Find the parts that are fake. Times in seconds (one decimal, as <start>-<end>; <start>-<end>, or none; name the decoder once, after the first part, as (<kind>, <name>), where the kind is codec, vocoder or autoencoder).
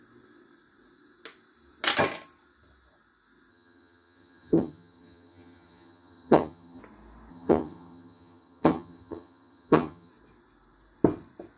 3.5-6.8 (vocoder, HiFi-GAN); 7.3-10.1